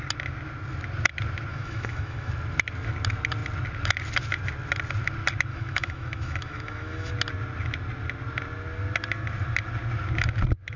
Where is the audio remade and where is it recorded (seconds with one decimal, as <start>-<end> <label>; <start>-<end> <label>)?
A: 0.0-1.5 recorded; 1.5-2.3 remade; 2.3-5.5 recorded; 5.5-7.1 remade; 7.1-10.8 recorded